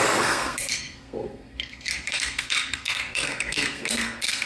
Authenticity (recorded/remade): remade